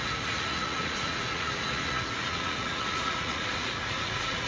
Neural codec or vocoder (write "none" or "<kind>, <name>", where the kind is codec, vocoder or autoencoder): vocoder, Vocos